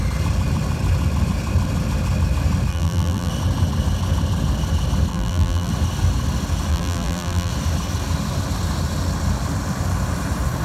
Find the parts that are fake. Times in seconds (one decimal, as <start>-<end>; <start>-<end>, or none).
2.7-3.3; 5.1-5.7; 6.7-7.5